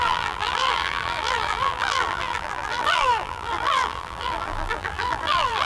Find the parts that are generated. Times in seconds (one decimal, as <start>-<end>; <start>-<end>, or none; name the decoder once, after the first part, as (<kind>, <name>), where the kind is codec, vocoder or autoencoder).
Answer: 0.0-5.7 (vocoder, BigVGAN v2)

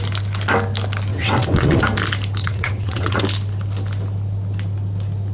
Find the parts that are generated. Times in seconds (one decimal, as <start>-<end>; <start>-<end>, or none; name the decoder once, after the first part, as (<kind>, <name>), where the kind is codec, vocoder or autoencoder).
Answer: 1.1-1.8 (vocoder, WaveNeXt); 2.4-3.2